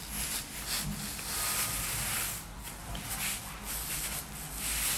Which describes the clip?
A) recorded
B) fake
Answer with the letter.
A